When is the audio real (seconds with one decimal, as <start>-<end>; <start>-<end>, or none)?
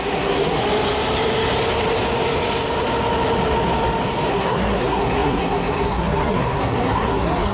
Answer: 0.6-4.3